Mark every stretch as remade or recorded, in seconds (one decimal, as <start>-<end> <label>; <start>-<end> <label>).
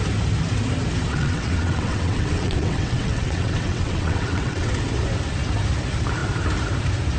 0.0-1.1 recorded; 1.1-4.7 remade; 4.7-7.2 recorded